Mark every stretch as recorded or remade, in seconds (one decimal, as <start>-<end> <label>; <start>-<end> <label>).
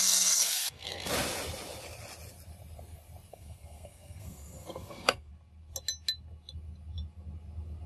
0.0-1.1 remade; 1.1-3.3 recorded; 3.3-5.3 remade; 5.3-7.9 recorded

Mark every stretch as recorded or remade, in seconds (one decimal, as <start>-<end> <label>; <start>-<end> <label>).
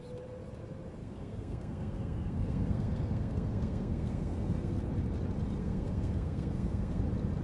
0.0-1.0 recorded; 1.0-4.8 remade; 4.8-5.6 recorded; 5.6-7.0 remade; 7.0-7.4 recorded